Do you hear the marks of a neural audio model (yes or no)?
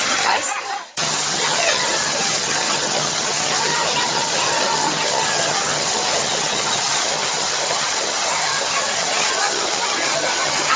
yes